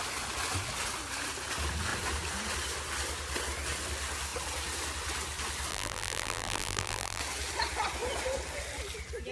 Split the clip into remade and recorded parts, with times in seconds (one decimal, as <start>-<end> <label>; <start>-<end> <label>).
0.0-5.7 recorded; 5.7-7.2 remade; 7.2-9.3 recorded